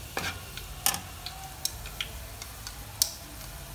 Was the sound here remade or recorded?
recorded